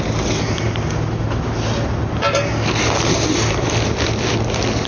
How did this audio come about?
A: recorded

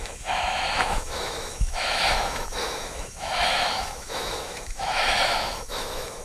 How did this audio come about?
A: remade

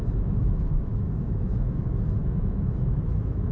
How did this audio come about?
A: remade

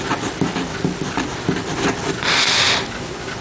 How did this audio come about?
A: recorded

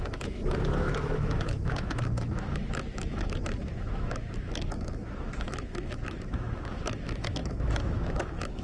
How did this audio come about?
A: remade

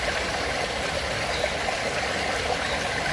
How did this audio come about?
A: recorded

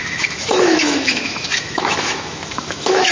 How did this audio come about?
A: remade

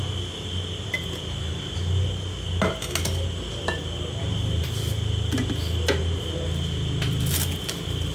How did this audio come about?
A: recorded